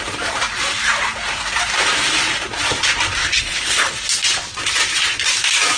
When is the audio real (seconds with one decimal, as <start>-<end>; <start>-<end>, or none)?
0.0-3.2; 3.9-5.8